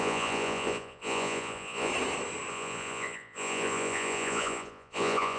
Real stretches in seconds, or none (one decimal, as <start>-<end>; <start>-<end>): 1.9-2.5